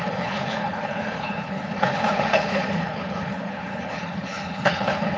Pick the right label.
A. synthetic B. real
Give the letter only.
A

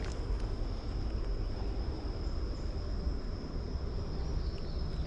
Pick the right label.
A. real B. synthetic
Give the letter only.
A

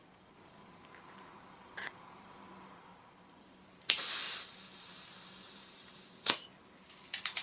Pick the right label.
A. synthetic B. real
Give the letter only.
A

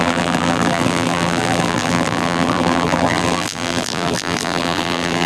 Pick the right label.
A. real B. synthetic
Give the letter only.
B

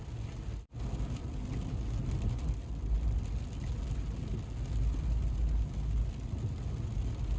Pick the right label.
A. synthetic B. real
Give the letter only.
B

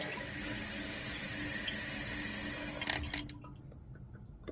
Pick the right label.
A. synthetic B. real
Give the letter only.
B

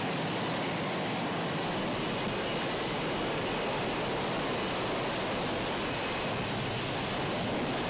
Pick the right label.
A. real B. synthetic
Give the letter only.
A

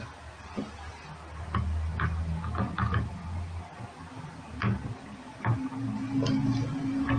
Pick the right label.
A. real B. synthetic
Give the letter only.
A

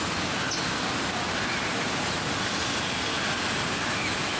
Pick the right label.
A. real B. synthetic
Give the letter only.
A